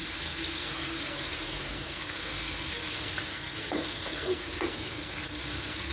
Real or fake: fake